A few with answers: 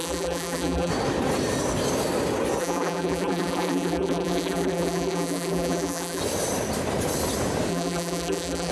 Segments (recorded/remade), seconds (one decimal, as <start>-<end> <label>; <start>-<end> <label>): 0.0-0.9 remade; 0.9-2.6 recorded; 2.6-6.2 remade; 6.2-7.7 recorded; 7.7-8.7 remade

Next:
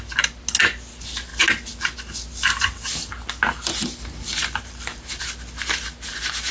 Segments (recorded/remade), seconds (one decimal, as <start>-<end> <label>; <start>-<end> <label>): 0.0-6.5 recorded

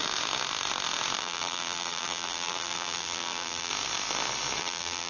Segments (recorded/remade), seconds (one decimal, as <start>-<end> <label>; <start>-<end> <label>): 0.0-1.2 recorded; 1.2-3.7 remade; 3.7-4.6 recorded; 4.6-5.1 remade

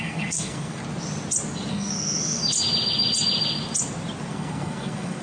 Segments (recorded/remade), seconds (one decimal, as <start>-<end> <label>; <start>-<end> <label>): 0.0-0.8 remade; 0.8-1.7 recorded; 1.7-2.4 remade; 2.4-4.3 recorded; 4.3-5.2 remade

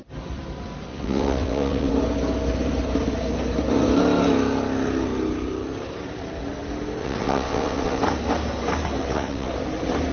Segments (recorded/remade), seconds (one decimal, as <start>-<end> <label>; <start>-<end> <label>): 0.0-0.9 recorded; 0.9-1.9 remade; 1.9-7.0 recorded; 7.0-8.0 remade; 8.0-9.0 recorded; 9.0-9.5 remade; 9.5-10.1 recorded